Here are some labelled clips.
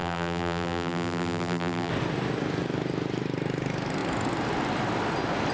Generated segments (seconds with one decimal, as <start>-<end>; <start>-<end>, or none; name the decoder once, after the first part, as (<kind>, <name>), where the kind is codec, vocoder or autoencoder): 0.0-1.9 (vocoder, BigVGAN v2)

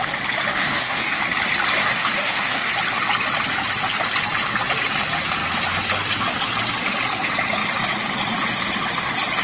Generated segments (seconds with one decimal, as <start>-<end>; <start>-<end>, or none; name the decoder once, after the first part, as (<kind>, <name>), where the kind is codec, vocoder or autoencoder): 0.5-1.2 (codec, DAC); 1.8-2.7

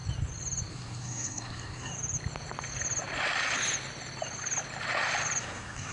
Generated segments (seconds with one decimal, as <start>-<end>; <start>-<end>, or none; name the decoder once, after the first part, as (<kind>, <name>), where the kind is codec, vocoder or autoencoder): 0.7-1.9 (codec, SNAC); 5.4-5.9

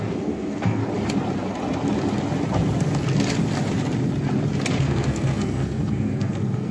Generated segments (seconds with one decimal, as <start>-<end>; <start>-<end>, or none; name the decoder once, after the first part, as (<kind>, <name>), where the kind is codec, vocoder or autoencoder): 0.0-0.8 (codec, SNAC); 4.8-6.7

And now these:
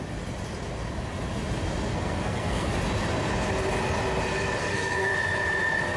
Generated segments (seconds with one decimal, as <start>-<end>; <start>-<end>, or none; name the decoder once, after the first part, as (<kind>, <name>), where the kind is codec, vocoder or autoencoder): 1.9-2.7 (codec, SNAC); 4.6-5.1

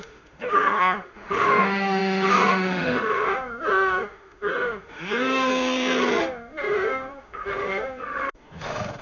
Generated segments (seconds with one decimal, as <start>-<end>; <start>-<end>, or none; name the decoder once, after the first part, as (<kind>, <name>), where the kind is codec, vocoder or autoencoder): 0.0-5.5 (autoencoder, DAC-VAE); 6.2-9.0